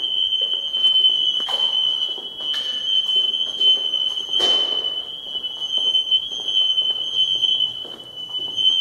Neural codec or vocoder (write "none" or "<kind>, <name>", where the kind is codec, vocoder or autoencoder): none